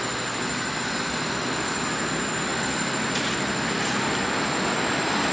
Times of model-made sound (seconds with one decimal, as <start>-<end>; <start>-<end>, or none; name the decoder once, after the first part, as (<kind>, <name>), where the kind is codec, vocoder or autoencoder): 2.5-4.1 (vocoder, BigVGAN v2)